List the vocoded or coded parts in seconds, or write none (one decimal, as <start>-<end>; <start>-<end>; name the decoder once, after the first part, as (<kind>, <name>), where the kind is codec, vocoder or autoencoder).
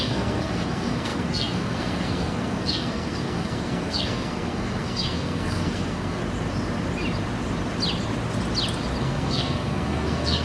0.0-6.2 (codec, SNAC); 9.0-10.4